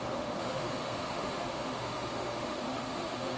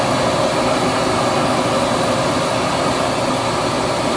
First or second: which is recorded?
second